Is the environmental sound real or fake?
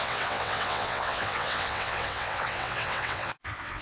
fake